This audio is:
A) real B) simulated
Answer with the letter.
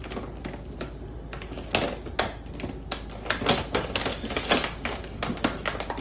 A